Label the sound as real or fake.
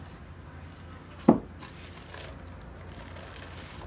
real